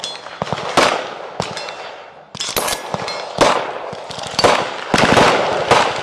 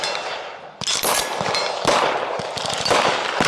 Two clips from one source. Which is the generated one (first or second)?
second